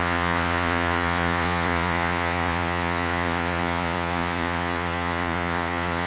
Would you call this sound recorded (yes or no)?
no